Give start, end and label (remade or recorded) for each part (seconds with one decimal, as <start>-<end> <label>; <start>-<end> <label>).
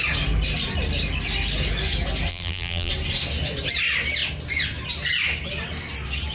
0.0-2.3 recorded; 2.3-2.9 remade; 2.9-6.3 recorded